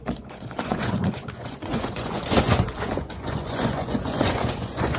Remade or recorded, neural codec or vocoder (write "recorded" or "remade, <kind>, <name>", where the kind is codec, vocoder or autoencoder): remade, vocoder, Vocos